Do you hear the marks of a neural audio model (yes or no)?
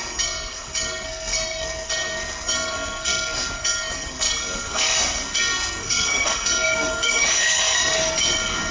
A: yes